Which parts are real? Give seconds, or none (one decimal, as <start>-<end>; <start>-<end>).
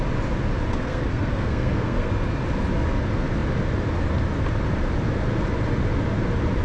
0.0-0.7; 2.1-6.6